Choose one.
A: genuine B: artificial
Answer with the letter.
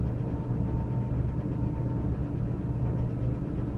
A